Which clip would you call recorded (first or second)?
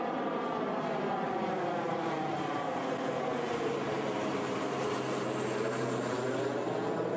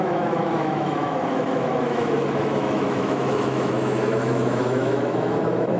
first